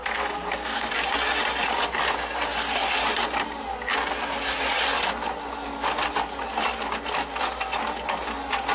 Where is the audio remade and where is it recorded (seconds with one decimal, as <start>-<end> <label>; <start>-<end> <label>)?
0.0-0.9 remade; 0.9-8.7 recorded